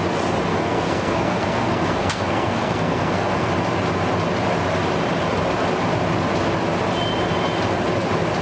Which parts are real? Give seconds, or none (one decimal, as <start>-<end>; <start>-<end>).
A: 0.0-0.5; 3.5-8.4